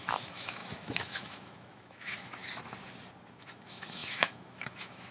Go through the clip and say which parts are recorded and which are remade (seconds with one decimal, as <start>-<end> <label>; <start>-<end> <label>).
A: 0.0-2.4 remade; 2.4-3.3 recorded; 3.3-5.1 remade

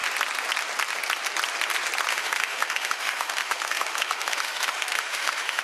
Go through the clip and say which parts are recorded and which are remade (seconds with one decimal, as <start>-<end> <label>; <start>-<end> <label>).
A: 0.0-2.1 recorded; 2.1-5.6 remade

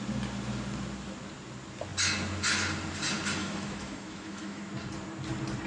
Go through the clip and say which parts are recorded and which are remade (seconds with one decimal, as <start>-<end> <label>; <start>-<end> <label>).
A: 0.0-3.4 recorded; 3.4-4.6 remade; 4.6-5.7 recorded

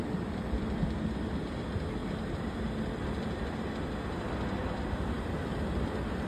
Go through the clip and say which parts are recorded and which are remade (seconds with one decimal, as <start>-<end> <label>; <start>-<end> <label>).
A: 0.0-6.3 recorded

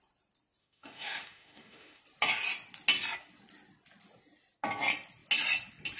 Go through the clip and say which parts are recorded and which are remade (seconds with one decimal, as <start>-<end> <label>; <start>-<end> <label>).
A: 0.0-0.6 recorded; 0.6-2.0 remade; 2.0-6.0 recorded

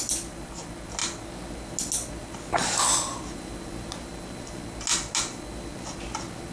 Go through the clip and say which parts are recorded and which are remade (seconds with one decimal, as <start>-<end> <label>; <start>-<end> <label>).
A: 0.0-6.5 recorded

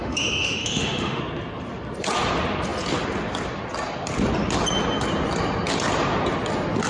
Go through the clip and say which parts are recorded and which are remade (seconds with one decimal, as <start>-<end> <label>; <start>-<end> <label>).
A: 0.0-1.2 remade; 1.2-6.9 recorded

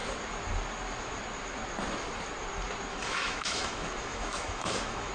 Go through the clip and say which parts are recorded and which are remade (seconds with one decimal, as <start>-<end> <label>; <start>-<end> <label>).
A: 0.0-2.9 recorded; 2.9-5.1 remade